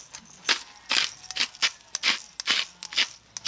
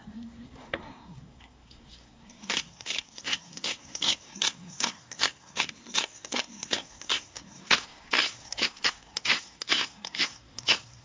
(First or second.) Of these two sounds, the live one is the first